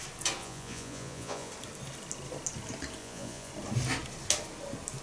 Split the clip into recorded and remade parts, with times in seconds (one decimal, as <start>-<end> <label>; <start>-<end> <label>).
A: 0.0-0.4 recorded; 0.4-1.5 remade; 1.5-3.0 recorded; 3.0-3.5 remade; 3.5-5.0 recorded